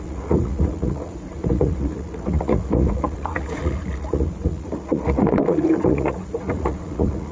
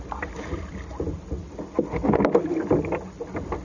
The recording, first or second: second